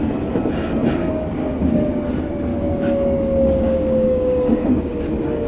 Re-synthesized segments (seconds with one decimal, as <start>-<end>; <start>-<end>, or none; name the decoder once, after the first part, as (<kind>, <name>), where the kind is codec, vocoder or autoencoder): 1.0-1.6 (codec, DAC); 2.5-5.1